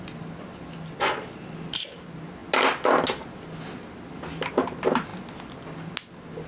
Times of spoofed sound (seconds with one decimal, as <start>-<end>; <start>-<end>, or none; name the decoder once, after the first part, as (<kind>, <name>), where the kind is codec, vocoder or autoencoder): none